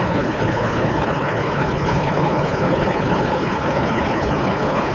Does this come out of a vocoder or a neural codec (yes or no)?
yes